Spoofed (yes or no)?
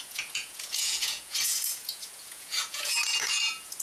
yes